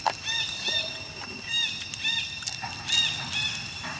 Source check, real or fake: real